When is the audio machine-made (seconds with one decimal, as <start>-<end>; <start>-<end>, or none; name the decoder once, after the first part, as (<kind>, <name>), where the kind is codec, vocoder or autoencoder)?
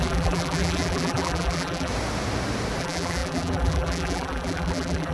0.0-1.9 (vocoder, BigVGAN v2); 2.8-5.1